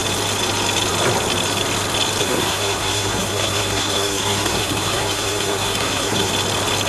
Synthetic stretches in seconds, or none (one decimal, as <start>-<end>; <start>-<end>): 2.2-6.3

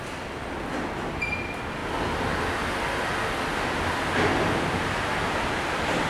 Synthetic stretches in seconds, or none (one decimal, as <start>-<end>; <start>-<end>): none